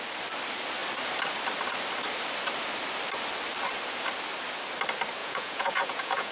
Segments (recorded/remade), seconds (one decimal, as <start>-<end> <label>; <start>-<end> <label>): 0.0-5.2 recorded; 5.2-6.3 remade